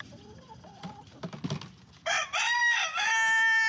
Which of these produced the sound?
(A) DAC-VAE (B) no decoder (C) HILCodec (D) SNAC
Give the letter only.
B